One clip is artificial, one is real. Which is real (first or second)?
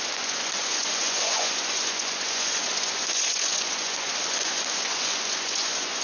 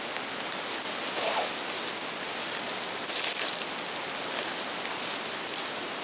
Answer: second